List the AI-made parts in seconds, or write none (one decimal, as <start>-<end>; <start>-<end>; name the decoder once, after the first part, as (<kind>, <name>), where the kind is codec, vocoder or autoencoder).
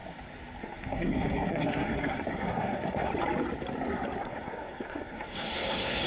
0.6-3.1 (codec, SNAC); 4.2-6.1